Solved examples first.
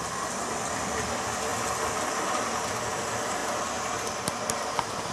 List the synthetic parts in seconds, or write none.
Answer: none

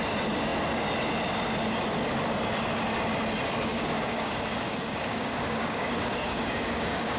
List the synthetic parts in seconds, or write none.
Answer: 3.7-7.2 (codec, DAC)